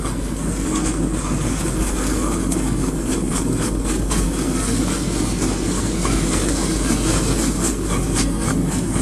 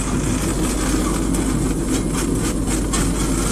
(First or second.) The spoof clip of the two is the first